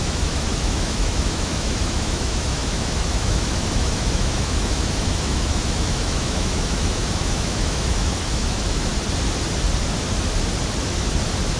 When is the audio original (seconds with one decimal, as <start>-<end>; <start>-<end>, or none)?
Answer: 8.9-11.6